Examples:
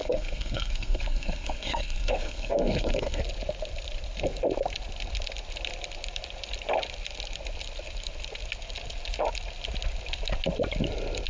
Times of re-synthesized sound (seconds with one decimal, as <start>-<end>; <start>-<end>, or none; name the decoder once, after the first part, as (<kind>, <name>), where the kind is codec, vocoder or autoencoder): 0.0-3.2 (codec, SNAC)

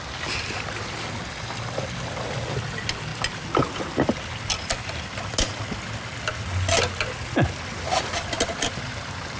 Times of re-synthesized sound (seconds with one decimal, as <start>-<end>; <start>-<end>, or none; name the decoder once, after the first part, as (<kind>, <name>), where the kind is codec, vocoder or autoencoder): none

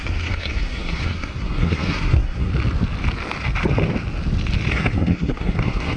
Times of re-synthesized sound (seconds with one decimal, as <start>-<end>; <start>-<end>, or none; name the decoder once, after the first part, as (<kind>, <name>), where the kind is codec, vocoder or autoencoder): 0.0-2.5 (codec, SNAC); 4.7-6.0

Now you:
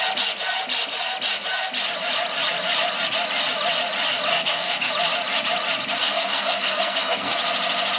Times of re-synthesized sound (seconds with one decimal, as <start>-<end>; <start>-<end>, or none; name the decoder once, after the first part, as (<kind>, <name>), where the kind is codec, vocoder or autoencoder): 4.3-4.9 (codec, SNAC); 6.0-7.3